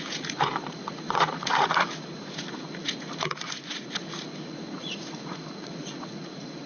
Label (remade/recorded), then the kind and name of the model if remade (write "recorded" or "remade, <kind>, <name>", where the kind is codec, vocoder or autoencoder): remade, vocoder, Vocos